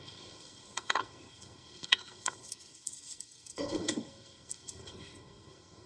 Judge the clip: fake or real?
fake